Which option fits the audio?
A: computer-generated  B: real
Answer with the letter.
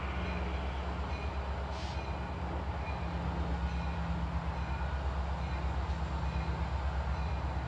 B